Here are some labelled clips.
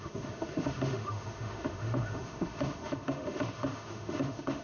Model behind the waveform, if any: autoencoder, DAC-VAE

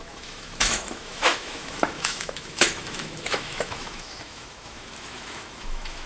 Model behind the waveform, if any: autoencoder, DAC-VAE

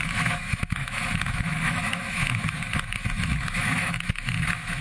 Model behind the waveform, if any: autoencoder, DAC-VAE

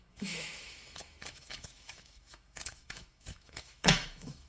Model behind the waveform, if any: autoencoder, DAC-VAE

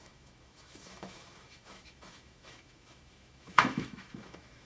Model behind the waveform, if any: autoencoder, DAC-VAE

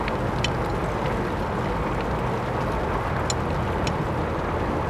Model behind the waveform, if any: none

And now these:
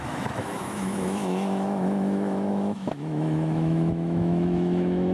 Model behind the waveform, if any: autoencoder, DAC-VAE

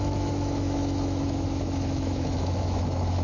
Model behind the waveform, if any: autoencoder, DAC-VAE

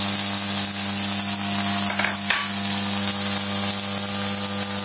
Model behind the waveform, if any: none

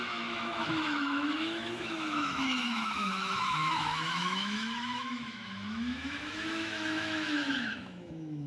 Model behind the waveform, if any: autoencoder, DAC-VAE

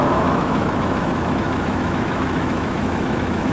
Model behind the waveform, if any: autoencoder, DAC-VAE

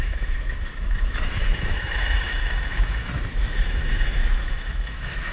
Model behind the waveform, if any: autoencoder, DAC-VAE